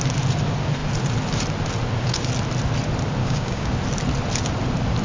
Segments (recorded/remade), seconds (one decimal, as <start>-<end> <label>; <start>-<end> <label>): 0.0-3.2 recorded; 3.2-3.7 remade; 3.7-5.0 recorded